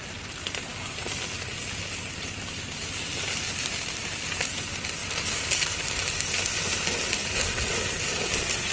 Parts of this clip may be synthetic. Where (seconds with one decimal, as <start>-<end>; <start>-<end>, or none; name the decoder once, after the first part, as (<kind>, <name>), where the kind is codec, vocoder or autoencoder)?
none